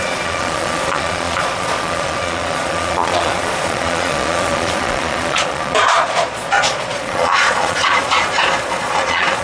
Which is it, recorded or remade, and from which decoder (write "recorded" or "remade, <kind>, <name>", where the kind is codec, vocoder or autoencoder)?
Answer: remade, vocoder, Vocos